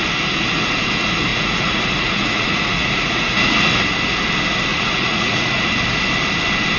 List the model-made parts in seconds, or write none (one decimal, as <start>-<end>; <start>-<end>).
1.3-3.7; 4.7-5.6